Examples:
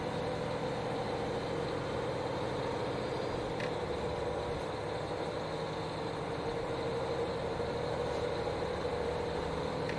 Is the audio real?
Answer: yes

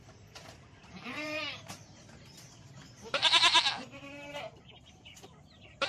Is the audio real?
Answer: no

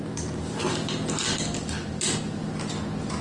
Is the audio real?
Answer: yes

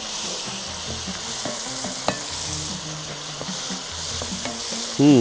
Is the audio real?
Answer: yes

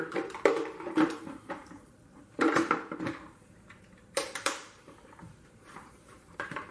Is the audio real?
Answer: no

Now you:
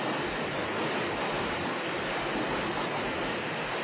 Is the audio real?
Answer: yes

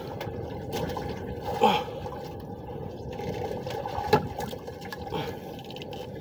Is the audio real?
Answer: yes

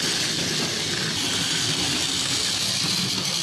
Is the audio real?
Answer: yes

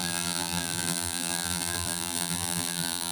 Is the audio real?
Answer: no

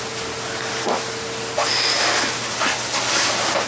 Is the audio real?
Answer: yes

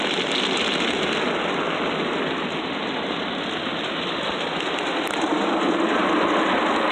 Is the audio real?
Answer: yes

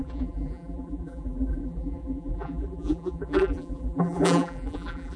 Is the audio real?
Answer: no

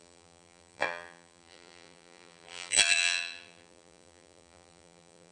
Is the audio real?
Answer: no